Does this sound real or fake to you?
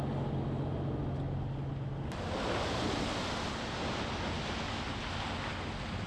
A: real